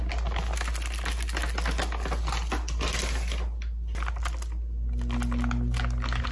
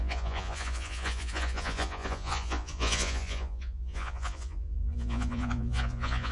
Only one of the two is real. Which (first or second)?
first